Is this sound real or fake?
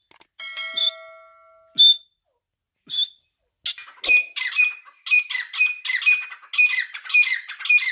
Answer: real